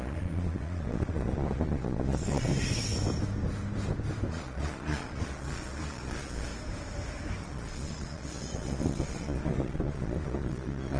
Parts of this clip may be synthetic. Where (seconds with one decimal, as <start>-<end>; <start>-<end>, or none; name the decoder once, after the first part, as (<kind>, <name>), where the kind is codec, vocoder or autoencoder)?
0.0-2.5 (vocoder, Vocos); 4.3-6.5; 7.4-11.0